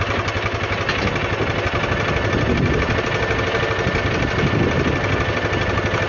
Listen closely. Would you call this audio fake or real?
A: real